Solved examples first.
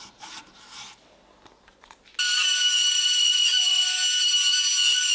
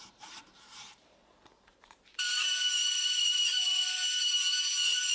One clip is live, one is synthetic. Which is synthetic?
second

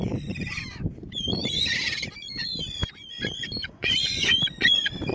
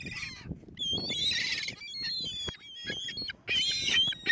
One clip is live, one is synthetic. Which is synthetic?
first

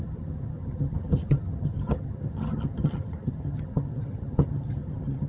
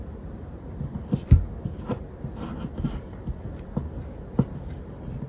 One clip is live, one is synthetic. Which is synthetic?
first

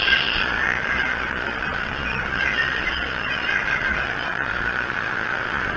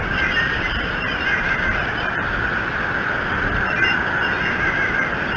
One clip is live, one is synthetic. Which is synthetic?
first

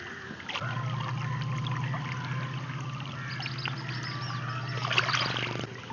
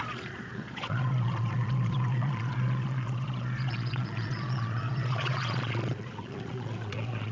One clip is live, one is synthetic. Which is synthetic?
second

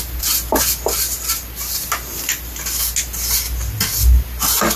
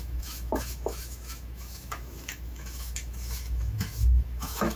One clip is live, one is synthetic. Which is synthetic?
second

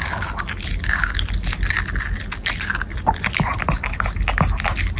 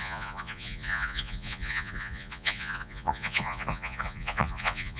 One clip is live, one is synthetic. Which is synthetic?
second